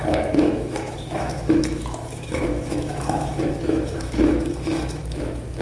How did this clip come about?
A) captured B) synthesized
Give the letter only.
B